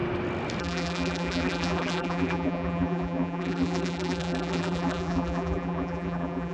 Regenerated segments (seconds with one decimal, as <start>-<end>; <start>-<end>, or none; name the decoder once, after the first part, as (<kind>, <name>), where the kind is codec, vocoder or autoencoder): 0.6-6.5 (vocoder, BigVGAN v2)